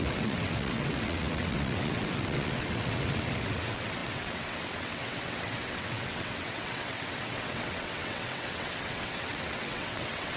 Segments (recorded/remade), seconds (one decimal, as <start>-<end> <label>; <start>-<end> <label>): 0.0-10.4 remade